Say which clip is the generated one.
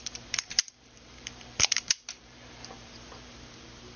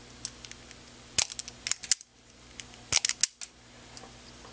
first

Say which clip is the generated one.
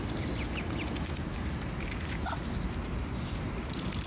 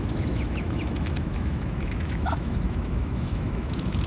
second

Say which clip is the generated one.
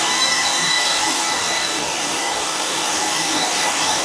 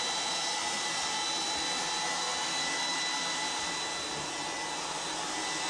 first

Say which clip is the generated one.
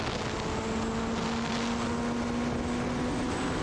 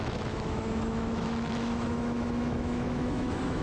second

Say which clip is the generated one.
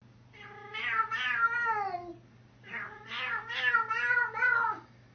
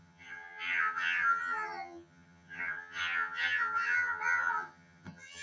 second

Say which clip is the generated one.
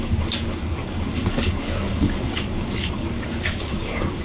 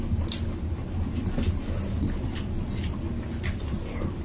first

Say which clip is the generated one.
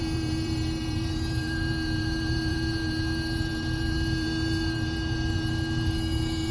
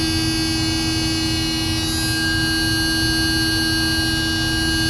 first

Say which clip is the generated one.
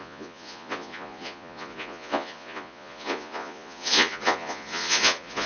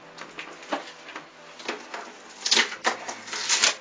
first